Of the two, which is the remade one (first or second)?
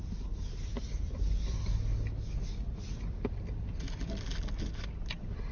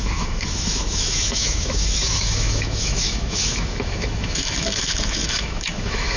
second